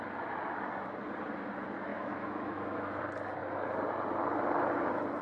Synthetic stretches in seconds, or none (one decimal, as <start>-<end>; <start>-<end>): 1.9-3.0